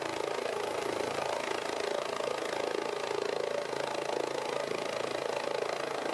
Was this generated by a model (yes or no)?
no